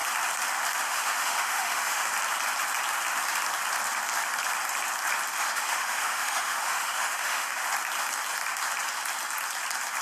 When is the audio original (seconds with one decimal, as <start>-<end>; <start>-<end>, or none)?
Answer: 0.0-0.8; 2.1-5.4; 7.6-10.0